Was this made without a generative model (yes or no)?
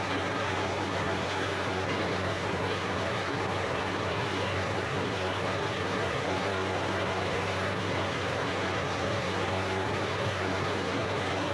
no